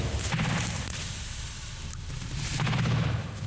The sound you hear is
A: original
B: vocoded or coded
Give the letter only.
A